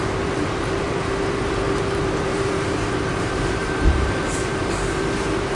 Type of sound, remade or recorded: remade